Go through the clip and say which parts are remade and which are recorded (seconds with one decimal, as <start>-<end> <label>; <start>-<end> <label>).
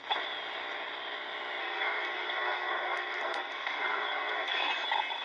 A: 0.0-1.6 recorded; 1.6-4.7 remade; 4.7-5.2 recorded